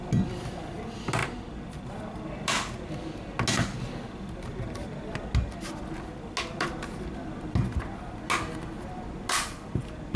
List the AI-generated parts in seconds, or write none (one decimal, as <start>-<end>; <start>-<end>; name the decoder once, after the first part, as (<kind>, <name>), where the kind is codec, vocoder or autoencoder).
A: none